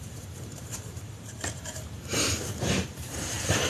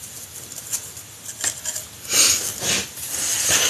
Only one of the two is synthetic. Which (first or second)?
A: first